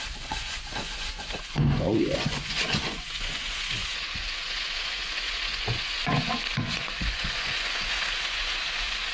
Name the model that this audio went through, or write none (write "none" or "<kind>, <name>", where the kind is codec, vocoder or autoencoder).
vocoder, Vocos